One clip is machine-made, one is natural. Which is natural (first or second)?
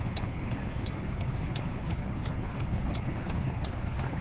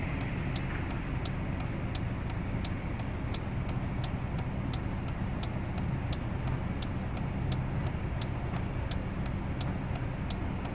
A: second